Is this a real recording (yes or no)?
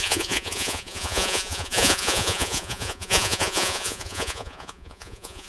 no